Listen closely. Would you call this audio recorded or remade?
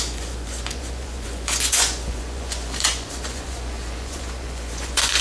remade